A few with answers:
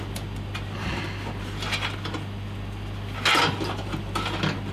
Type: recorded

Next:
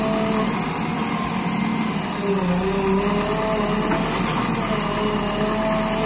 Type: recorded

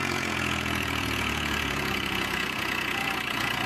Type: remade